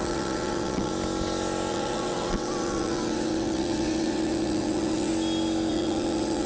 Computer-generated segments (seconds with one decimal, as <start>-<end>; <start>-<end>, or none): 0.0-0.9; 1.7-5.1; 5.7-6.5